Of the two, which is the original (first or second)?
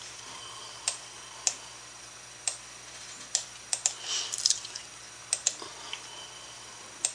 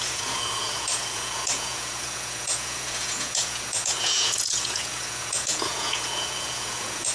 first